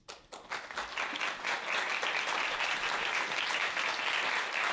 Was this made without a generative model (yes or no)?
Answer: yes